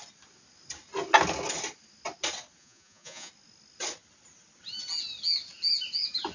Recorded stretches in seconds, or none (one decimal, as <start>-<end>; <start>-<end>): 0.0-2.6; 3.3-6.3